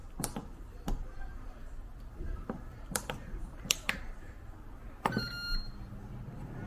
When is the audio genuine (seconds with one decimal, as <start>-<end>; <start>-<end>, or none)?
4.0-6.7